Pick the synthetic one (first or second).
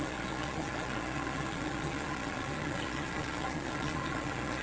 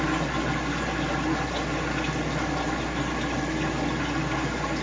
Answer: first